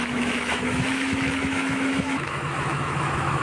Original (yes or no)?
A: no